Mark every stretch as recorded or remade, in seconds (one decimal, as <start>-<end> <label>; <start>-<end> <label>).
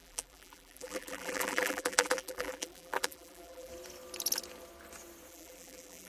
0.0-3.7 remade; 3.7-5.3 recorded; 5.3-6.1 remade